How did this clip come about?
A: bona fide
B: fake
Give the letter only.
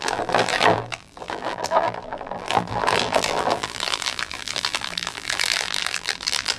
B